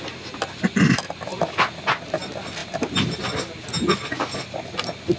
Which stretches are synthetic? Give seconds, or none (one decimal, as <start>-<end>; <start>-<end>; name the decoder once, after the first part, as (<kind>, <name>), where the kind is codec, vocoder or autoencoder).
none